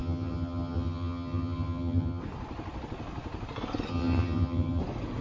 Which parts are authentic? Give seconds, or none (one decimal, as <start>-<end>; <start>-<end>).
2.2-3.9; 4.8-5.2